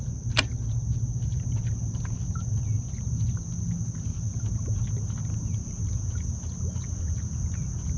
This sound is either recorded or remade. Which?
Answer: recorded